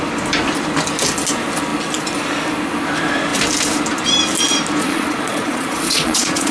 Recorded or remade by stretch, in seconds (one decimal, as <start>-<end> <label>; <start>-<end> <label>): 0.0-4.8 recorded; 4.8-6.5 remade